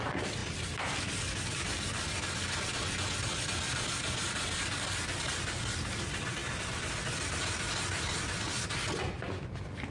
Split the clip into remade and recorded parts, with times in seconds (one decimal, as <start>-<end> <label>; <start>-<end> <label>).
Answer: 0.0-9.9 recorded